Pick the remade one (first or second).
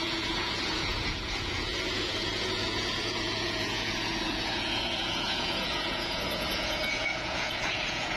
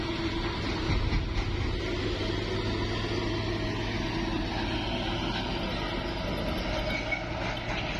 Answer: first